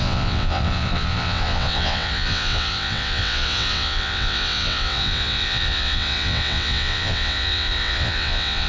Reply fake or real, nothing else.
fake